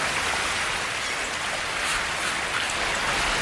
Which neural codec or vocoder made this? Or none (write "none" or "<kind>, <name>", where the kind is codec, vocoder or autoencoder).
none